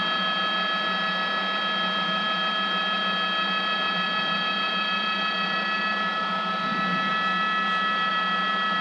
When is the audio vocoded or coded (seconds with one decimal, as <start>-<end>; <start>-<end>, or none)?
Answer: none